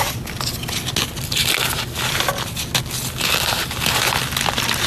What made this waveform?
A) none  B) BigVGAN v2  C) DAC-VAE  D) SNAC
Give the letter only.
A